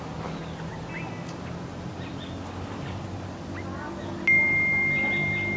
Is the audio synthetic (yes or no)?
no